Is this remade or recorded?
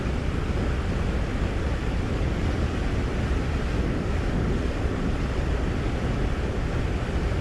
recorded